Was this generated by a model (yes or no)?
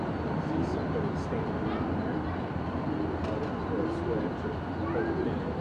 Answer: no